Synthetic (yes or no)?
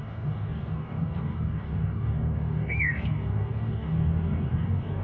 yes